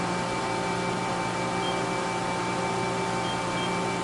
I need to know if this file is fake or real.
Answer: real